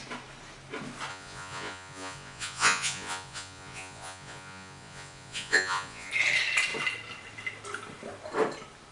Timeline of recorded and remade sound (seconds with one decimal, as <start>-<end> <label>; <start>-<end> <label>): 0.0-1.1 recorded; 1.1-6.1 remade; 6.1-8.9 recorded